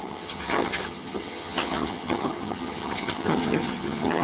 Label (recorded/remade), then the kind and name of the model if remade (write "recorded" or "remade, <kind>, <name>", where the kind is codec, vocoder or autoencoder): remade, vocoder, HiFi-GAN